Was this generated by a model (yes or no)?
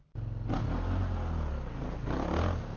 no